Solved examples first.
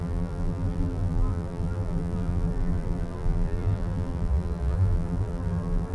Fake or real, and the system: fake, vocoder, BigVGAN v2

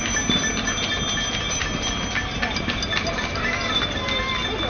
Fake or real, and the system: real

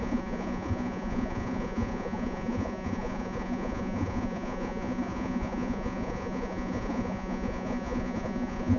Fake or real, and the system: fake, vocoder, Vocos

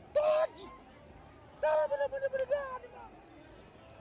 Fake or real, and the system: real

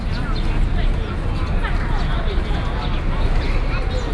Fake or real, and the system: real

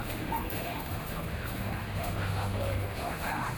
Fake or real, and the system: fake, autoencoder, DAC-VAE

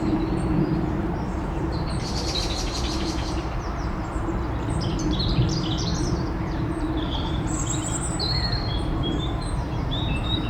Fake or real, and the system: fake, vocoder, BigVGAN v2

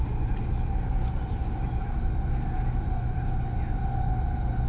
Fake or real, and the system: real